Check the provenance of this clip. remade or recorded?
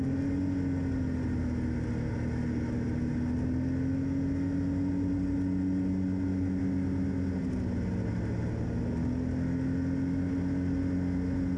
recorded